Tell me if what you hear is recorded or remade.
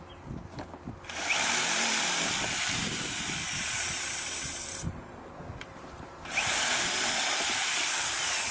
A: remade